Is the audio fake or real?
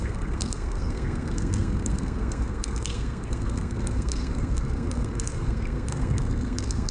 fake